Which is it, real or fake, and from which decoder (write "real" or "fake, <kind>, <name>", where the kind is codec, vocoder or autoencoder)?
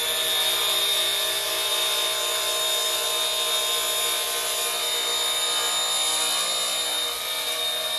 real